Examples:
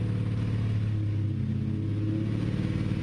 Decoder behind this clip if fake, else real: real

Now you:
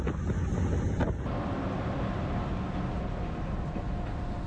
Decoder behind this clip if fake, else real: real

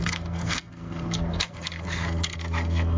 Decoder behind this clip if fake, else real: fake, codec, SNAC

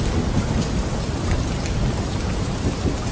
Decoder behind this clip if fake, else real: real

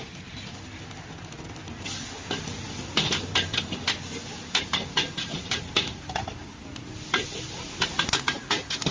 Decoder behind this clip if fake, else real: real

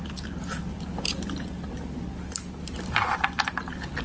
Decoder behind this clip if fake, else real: real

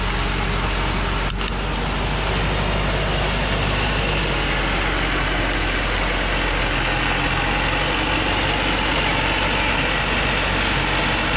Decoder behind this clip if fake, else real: real